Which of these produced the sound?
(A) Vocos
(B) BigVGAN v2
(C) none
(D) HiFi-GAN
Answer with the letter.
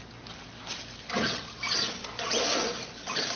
C